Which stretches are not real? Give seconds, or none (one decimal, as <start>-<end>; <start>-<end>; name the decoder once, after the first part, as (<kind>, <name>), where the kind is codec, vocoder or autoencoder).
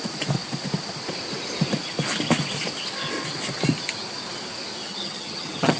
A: 4.9-5.8 (vocoder, HiFi-GAN)